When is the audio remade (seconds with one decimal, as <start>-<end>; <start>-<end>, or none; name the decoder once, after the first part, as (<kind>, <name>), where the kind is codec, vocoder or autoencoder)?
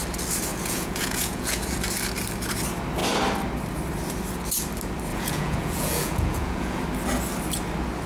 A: 0.5-1.6 (vocoder, Vocos); 5.1-6.8